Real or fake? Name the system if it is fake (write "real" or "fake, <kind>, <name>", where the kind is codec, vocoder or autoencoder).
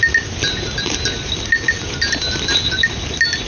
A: real